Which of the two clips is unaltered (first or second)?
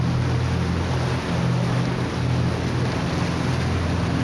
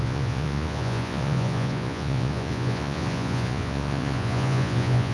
first